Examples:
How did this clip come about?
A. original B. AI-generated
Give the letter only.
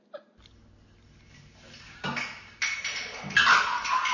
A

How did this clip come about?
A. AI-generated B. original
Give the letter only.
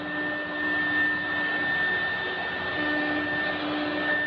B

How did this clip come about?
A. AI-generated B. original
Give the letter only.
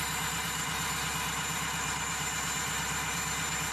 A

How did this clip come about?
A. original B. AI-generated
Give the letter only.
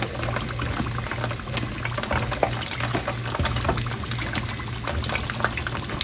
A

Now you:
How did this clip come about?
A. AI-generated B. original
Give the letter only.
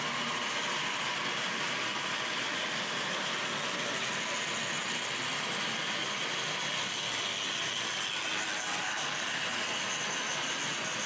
B